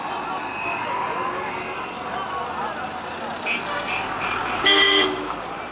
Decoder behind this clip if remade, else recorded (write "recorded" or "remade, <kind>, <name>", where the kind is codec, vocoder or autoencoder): recorded